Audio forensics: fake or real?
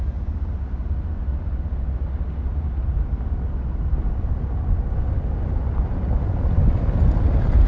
real